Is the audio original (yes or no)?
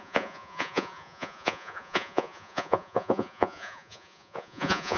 no